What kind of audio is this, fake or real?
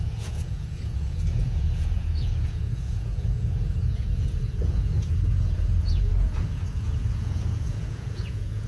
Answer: fake